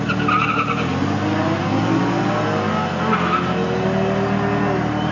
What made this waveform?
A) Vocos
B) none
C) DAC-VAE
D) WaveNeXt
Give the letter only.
B